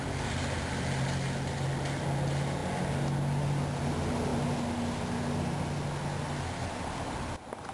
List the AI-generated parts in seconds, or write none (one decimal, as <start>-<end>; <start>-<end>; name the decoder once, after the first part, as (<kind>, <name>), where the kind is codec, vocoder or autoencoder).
0.0-4.3 (vocoder, BigVGAN v2)